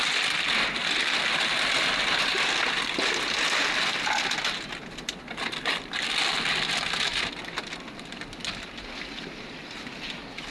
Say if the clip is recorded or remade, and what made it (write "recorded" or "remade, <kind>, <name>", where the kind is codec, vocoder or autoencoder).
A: recorded